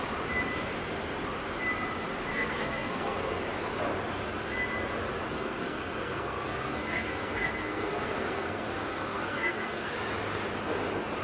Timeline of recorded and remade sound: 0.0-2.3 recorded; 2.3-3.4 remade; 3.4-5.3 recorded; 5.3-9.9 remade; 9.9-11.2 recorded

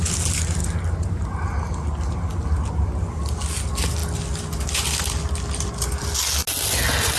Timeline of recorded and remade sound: 0.0-7.2 recorded

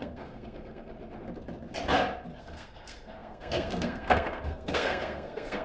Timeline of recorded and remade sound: 0.0-0.9 remade; 0.9-2.4 recorded; 2.4-5.6 remade

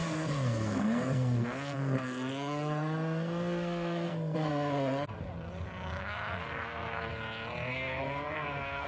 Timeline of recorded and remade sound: 0.0-5.1 remade; 5.1-6.0 recorded; 6.0-7.1 remade; 7.1-7.7 recorded; 7.7-8.9 remade